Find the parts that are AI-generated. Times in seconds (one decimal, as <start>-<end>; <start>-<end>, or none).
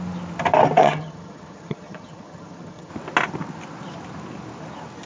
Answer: 0.8-2.9